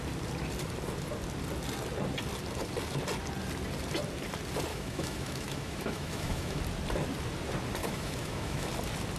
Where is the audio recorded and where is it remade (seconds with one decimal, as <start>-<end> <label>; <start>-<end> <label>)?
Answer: 0.0-4.7 recorded; 4.7-6.6 remade; 6.6-7.8 recorded; 7.8-8.7 remade; 8.7-9.2 recorded